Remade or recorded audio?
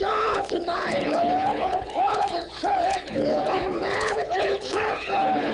remade